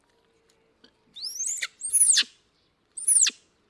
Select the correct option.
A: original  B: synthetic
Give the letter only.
A